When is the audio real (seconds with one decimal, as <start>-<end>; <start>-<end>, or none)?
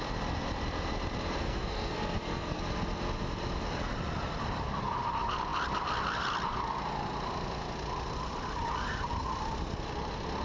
0.0-1.4; 2.6-10.4